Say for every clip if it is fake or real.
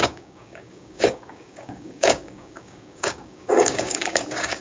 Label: fake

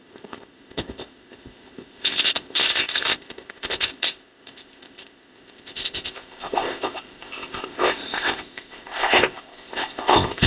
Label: fake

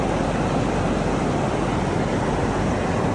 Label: real